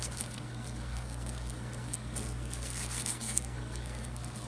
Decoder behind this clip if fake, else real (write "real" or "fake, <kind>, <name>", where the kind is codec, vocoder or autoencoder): fake, codec, SNAC